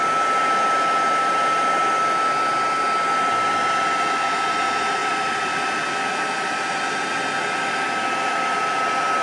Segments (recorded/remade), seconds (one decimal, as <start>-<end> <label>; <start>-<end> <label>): 0.0-9.2 recorded